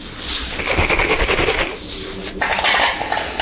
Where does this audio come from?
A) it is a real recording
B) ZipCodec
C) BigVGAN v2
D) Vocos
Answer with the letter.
A